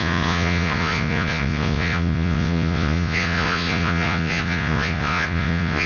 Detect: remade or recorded remade